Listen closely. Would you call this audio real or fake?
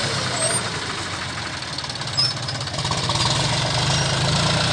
real